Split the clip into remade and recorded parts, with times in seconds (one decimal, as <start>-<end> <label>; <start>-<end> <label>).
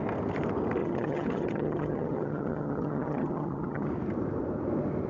0.0-0.8 recorded; 0.8-3.9 remade; 3.9-5.1 recorded